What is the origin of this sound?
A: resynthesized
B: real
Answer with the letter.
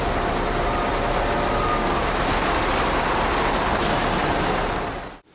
B